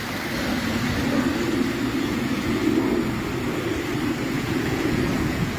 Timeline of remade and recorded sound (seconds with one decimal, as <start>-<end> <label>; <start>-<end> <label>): 0.0-2.0 recorded; 2.0-2.6 remade; 2.6-4.3 recorded; 4.3-5.6 remade